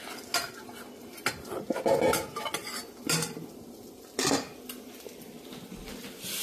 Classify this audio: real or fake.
real